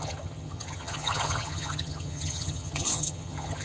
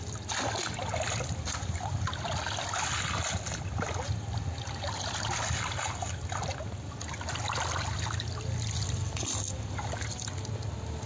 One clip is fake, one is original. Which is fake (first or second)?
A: first